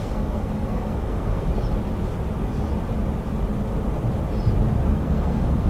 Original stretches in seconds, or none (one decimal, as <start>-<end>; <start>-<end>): 1.5-4.9